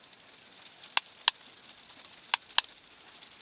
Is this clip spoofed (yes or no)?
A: no